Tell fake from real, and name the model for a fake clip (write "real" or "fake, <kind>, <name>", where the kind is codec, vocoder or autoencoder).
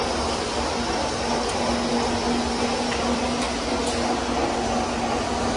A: real